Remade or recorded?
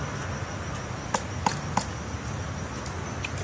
recorded